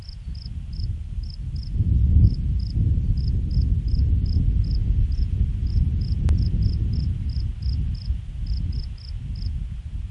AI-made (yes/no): no